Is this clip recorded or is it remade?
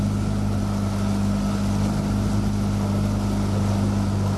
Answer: recorded